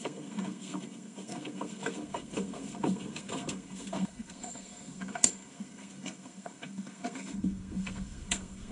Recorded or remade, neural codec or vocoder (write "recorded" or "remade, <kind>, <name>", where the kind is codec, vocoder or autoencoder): remade, codec, SNAC